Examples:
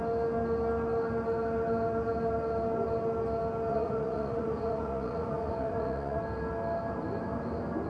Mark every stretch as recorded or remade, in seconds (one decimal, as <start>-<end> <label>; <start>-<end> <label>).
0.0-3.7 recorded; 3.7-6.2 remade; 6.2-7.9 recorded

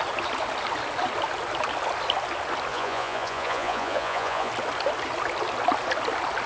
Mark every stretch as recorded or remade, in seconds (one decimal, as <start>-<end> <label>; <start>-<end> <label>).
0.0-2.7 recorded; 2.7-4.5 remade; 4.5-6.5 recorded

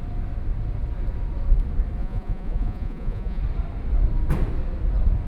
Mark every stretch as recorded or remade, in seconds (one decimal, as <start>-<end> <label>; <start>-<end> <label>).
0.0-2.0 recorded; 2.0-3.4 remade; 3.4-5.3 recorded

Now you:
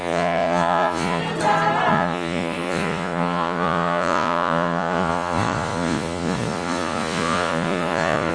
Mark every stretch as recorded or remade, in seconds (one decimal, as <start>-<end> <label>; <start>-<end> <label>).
0.0-1.2 remade; 1.2-1.9 recorded; 1.9-8.3 remade